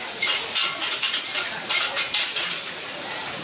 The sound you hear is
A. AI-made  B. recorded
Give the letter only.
A